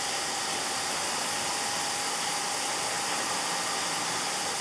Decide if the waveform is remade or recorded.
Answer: recorded